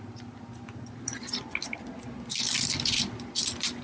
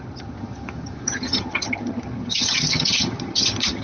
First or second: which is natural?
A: first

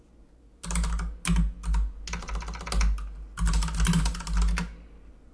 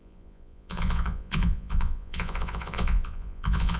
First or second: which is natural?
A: first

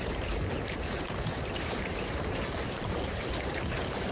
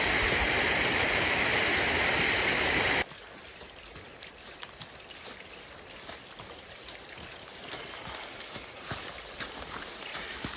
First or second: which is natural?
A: second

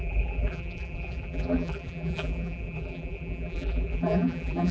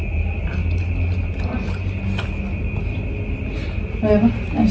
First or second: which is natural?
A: second